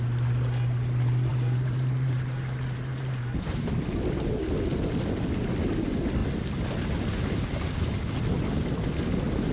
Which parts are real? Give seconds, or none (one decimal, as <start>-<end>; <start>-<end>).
0.0-1.3; 3.7-9.5